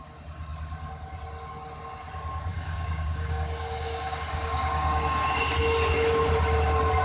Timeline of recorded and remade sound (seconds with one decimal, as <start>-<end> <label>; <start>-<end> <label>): 0.0-2.5 recorded; 2.5-5.4 remade; 5.4-7.0 recorded